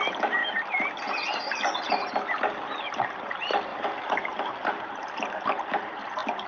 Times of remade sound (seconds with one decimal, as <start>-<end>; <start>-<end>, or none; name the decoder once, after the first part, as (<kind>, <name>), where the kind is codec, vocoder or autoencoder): 3.7-5.6 (vocoder, BigVGAN v2)